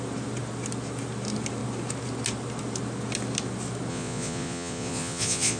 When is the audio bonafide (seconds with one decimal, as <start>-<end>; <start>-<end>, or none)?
0.0-3.9